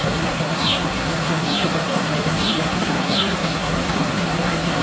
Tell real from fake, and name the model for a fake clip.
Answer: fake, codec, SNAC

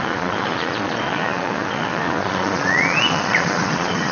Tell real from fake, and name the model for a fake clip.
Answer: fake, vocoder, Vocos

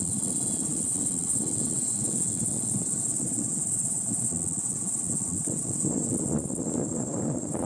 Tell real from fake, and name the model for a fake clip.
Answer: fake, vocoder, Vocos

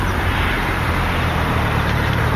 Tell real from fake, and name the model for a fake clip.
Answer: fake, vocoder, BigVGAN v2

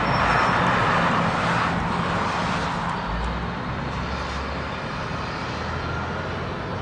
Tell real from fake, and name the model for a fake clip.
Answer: real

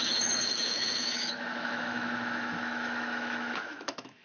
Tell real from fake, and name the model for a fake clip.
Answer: fake, autoencoder, DAC-VAE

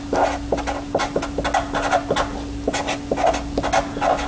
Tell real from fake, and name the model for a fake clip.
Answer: real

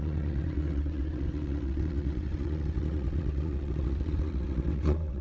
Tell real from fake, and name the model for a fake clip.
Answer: fake, vocoder, WaveNeXt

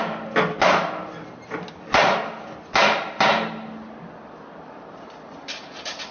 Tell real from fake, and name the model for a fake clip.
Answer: real